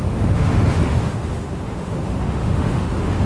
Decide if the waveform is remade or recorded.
remade